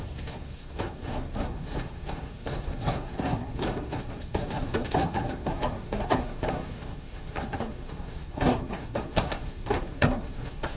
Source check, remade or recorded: remade